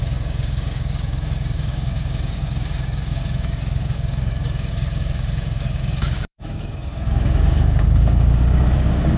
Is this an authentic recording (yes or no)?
no